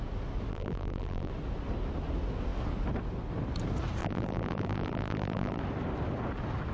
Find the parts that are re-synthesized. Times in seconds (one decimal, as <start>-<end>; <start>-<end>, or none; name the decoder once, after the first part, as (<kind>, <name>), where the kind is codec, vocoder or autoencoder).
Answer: 0.5-1.3 (vocoder, BigVGAN v2); 4.0-5.6